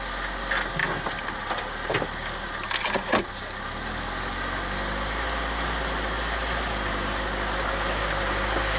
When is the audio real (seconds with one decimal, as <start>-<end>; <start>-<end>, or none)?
0.0-8.8